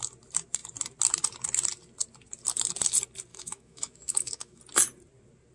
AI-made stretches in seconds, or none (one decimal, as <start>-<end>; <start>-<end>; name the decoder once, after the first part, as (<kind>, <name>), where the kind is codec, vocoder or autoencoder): 3.3-4.6 (autoencoder, DAC-VAE)